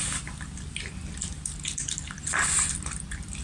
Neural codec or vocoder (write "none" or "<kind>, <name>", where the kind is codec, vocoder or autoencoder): none